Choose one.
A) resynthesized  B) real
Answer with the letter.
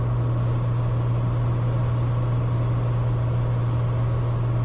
B